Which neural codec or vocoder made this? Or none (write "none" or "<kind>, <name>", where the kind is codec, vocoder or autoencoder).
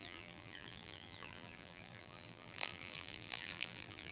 vocoder, BigVGAN v2